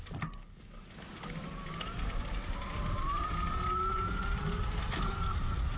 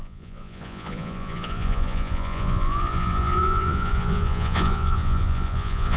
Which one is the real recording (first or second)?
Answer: first